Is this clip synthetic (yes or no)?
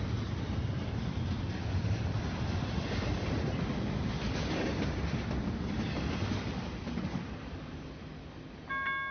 no